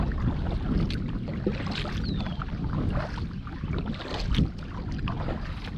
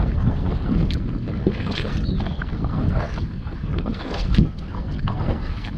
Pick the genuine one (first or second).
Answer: first